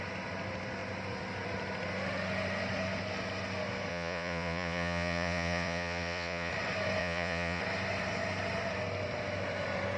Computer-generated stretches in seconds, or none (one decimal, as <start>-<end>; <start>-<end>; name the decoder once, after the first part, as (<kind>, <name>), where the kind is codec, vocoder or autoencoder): 3.9-6.5 (vocoder, Vocos); 7.0-7.6